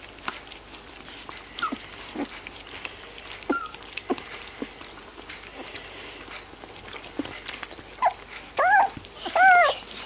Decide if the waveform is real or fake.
real